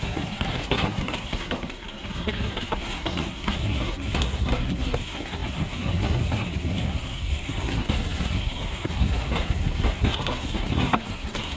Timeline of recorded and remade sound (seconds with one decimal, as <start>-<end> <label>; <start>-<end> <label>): 0.0-11.6 remade